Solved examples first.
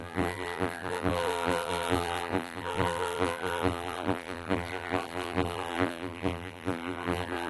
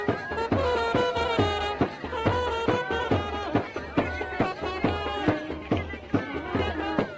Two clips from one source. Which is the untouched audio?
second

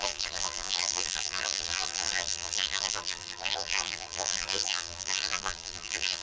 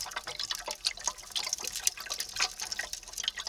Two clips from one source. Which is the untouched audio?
second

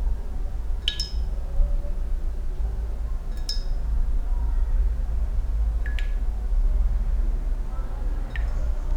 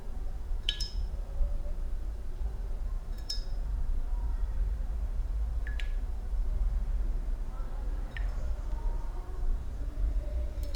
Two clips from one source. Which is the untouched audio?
first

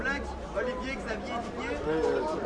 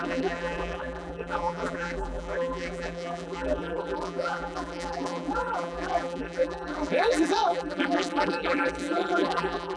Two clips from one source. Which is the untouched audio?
first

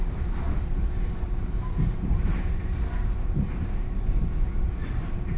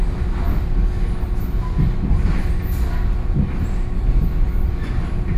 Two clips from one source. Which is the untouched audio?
second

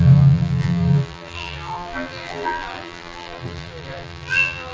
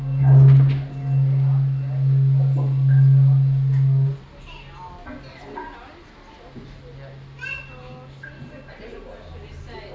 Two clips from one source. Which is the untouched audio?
second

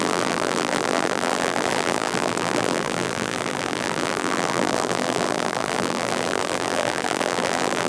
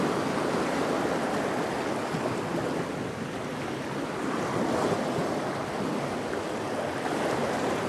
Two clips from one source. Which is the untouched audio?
second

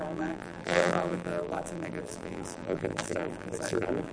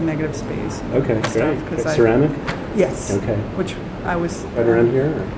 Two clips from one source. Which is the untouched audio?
second